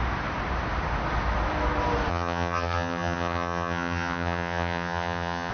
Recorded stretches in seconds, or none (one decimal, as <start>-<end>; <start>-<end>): 0.0-2.1